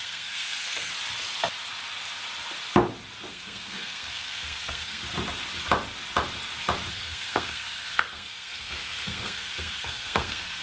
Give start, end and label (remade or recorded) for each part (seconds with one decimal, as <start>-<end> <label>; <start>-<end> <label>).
0.0-0.9 remade; 0.9-3.3 recorded; 3.3-5.0 remade; 5.0-6.9 recorded; 6.9-10.6 remade